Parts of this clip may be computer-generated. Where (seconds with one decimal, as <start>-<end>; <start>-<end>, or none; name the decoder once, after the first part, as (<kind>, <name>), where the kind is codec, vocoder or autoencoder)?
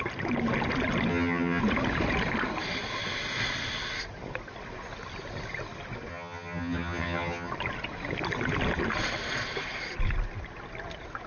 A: 1.1-1.6 (vocoder, HiFi-GAN); 6.1-7.5